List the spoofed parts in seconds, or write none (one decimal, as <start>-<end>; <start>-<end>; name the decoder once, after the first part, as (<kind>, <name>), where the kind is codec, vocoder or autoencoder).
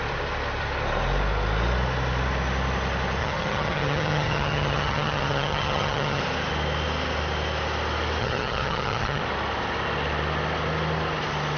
3.2-6.2 (vocoder, HiFi-GAN); 8.2-9.2